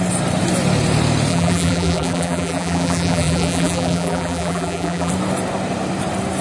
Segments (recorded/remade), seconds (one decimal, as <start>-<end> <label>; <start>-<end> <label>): 0.0-1.3 recorded; 1.3-5.1 remade; 5.1-6.4 recorded